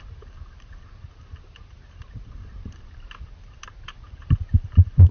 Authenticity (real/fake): fake